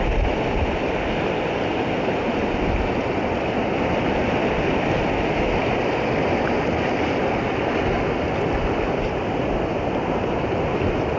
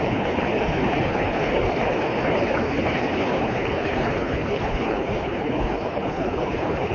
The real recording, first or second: first